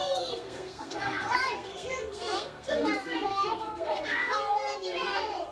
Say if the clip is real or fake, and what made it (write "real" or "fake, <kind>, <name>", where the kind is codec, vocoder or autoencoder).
fake, codec, SNAC